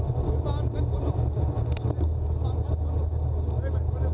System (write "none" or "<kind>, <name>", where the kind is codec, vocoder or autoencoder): none